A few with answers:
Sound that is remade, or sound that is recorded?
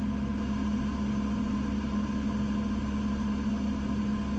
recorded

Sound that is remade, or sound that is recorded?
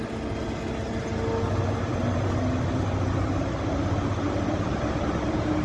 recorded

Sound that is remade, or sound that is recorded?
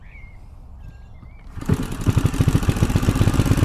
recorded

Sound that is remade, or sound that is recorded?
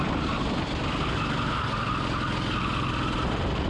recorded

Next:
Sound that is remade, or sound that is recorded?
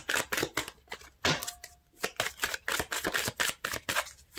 recorded